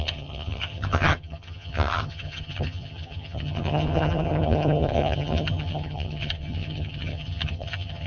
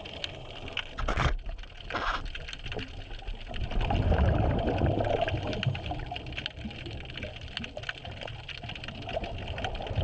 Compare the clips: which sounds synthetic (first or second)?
first